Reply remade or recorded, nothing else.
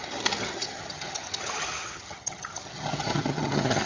remade